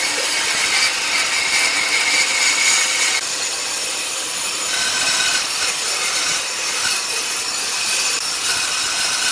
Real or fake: real